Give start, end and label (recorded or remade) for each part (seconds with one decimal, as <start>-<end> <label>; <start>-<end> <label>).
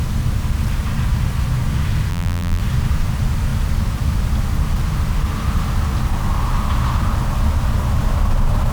0.0-2.1 recorded; 2.1-2.6 remade; 2.6-8.7 recorded